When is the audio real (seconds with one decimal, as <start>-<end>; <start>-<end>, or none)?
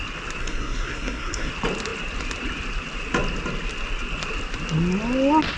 0.0-0.4; 1.5-5.6